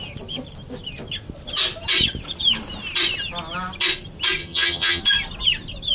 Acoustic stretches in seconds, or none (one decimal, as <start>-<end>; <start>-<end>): 0.0-4.4; 5.0-5.9